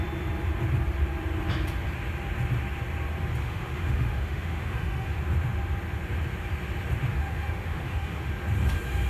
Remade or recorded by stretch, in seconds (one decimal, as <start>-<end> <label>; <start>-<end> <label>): 0.0-3.4 recorded; 3.4-5.2 remade; 5.2-7.1 recorded; 7.1-8.3 remade; 8.3-9.1 recorded